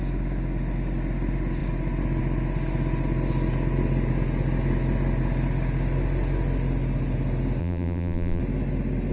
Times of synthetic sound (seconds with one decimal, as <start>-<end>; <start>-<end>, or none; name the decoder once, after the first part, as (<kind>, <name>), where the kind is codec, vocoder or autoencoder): 7.6-8.4 (vocoder, BigVGAN v2)